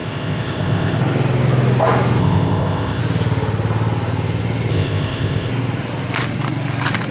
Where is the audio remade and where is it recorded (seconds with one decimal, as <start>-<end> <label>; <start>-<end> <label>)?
0.0-1.0 remade; 1.0-2.2 recorded; 2.2-3.0 remade; 3.0-4.7 recorded; 4.7-5.5 remade; 5.5-7.1 recorded